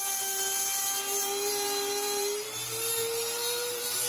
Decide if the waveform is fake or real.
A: fake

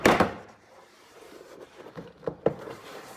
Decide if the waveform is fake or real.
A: fake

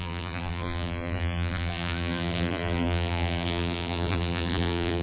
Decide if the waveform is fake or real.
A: fake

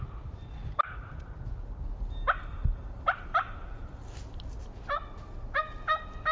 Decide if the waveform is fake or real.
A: real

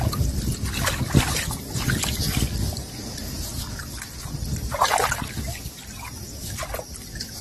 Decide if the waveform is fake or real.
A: real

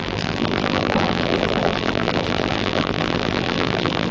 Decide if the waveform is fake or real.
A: fake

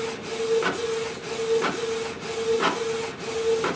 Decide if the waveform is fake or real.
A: real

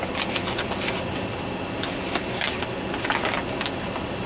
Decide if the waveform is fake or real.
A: real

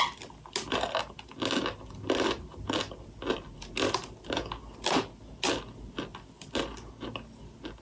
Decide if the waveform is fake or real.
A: real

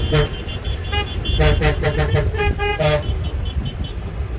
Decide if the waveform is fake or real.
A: fake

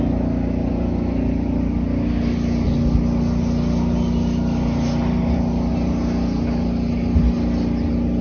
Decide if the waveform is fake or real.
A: real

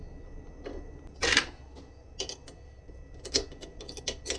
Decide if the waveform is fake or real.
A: real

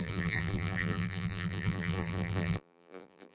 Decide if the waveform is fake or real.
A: fake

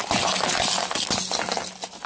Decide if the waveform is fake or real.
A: real